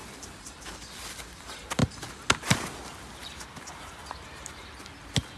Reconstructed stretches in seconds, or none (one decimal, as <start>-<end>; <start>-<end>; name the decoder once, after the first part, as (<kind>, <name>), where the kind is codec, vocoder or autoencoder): 0.0-0.6 (vocoder, BigVGAN v2); 3.2-4.6